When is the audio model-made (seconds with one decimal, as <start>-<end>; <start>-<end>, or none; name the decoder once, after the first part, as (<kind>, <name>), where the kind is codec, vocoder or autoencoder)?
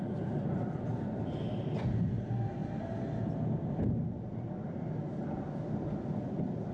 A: none